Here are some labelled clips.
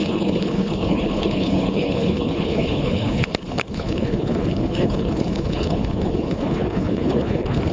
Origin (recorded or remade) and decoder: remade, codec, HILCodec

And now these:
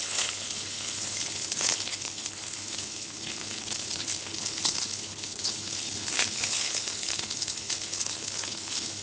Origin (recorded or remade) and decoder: remade, codec, HILCodec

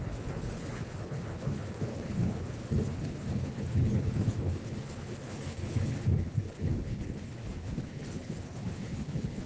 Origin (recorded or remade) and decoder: remade, codec, HILCodec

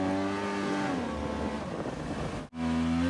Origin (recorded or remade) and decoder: recorded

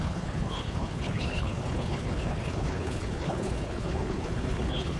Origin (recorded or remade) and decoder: remade, codec, HILCodec